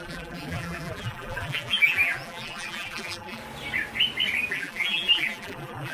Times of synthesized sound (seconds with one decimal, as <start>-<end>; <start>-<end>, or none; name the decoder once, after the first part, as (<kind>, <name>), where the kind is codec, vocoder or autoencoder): 0.0-3.4 (vocoder, BigVGAN v2); 4.5-5.9

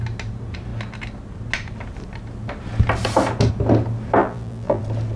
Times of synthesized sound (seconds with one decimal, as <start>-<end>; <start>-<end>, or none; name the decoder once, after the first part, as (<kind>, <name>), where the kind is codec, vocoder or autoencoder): 4.2-4.8 (vocoder, BigVGAN v2)

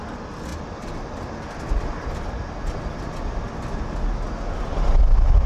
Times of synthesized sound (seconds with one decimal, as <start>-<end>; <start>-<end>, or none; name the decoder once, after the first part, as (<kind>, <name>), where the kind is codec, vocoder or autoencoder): none